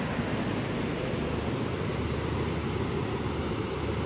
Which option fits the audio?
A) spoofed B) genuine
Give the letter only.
B